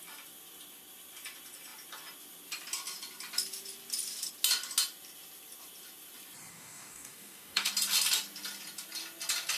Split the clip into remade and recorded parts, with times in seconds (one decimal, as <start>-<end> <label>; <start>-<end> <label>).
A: 0.0-6.5 recorded; 6.5-7.7 remade; 7.7-9.6 recorded